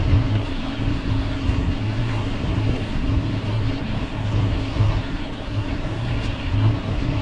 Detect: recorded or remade remade